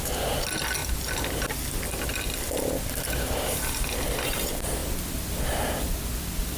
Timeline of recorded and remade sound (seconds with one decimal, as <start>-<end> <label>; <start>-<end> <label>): 0.0-6.6 recorded